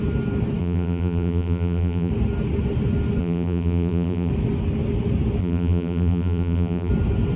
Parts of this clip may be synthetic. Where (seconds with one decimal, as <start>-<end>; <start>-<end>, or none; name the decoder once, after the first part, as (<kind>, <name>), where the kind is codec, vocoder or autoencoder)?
0.6-2.1 (vocoder, BigVGAN v2); 3.2-4.3; 5.4-6.9